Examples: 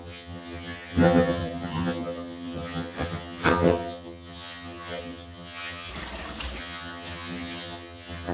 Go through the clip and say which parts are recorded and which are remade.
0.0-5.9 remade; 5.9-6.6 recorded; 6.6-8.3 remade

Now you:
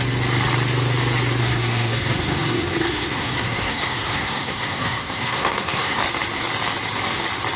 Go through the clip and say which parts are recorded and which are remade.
0.0-1.4 recorded; 1.4-6.0 remade; 6.0-7.6 recorded

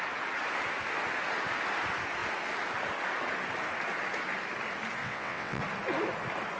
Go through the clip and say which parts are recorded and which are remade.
0.0-5.0 recorded; 5.0-5.6 remade; 5.6-6.6 recorded

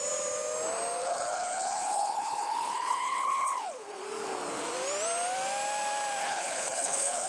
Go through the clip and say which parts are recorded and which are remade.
0.0-1.0 recorded; 1.0-4.0 remade; 4.0-6.2 recorded; 6.2-7.3 remade

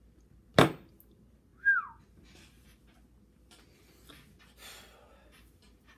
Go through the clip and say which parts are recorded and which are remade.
0.0-6.0 recorded

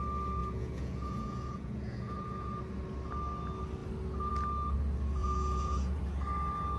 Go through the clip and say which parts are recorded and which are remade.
0.0-0.4 recorded; 0.4-2.6 remade; 2.6-5.2 recorded; 5.2-6.0 remade; 6.0-6.8 recorded

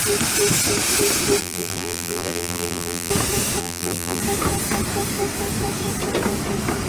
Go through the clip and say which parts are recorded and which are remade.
0.0-1.4 recorded; 1.4-3.1 remade; 3.1-3.6 recorded; 3.6-4.2 remade; 4.2-6.9 recorded